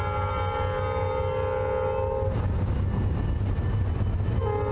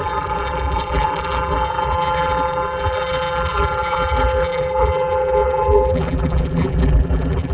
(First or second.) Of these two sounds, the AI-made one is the second